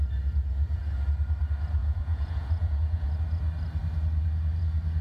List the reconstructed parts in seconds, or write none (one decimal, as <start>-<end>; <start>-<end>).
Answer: 1.8-3.1

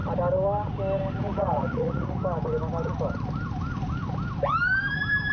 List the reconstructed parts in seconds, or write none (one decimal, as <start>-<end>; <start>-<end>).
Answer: 1.2-2.2

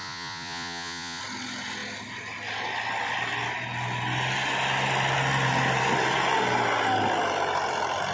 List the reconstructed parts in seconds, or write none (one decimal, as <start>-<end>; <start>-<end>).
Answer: 0.0-1.2

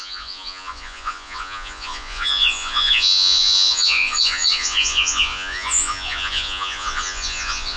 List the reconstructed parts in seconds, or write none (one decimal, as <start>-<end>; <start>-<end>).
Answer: 0.0-7.8

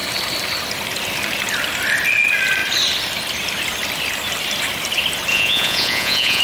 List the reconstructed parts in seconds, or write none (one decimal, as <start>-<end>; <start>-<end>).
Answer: 5.3-6.4

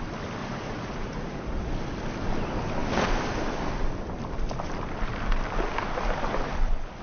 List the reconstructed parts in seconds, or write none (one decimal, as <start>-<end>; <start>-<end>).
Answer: 0.4-1.7

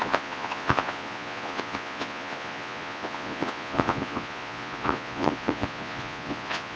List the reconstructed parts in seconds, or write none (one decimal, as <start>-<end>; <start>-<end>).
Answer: 0.0-6.8